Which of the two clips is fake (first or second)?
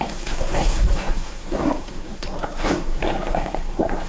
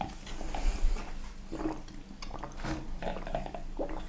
first